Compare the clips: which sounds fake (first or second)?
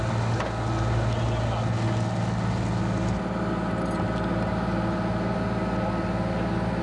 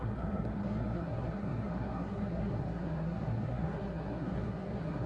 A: second